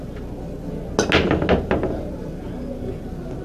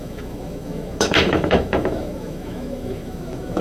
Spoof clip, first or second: second